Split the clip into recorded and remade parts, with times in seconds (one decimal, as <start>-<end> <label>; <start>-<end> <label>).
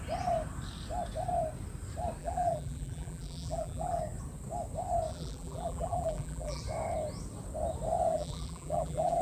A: 0.0-2.2 recorded; 2.2-4.0 remade; 4.0-5.1 recorded; 5.1-6.6 remade; 6.6-8.1 recorded; 8.1-9.2 remade